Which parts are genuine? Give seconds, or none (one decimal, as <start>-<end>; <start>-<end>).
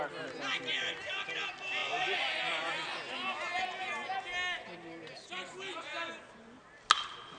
0.0-7.4